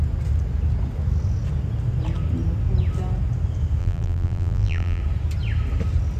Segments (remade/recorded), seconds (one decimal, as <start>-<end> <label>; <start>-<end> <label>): 0.0-3.8 recorded; 3.8-5.0 remade; 5.0-6.2 recorded